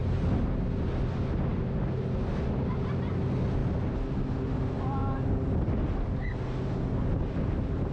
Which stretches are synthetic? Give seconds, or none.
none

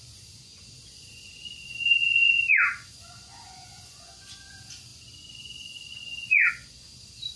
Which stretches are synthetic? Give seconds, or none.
0.0-7.4 (vocoder, Vocos)

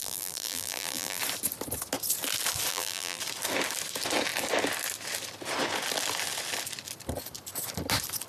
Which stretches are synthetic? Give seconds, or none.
0.0-1.2 (vocoder, BigVGAN v2); 2.7-3.2